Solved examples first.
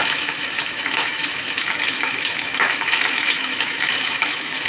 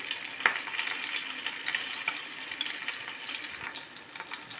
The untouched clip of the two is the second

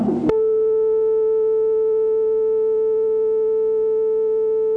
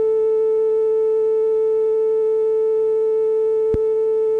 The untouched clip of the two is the first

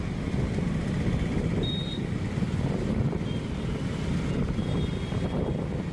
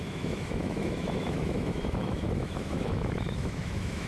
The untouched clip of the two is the first